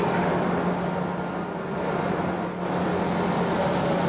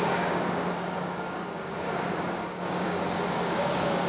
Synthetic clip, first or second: second